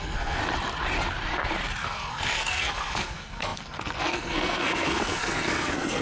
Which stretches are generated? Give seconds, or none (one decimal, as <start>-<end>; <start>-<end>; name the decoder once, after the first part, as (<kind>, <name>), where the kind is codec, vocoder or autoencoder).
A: 0.0-0.4 (codec, SNAC); 1.8-6.0